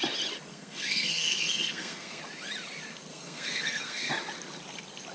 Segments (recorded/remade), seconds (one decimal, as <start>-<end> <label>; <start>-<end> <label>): 0.0-0.5 recorded; 0.5-2.2 remade; 2.2-3.1 recorded; 3.1-4.1 remade; 4.1-5.1 recorded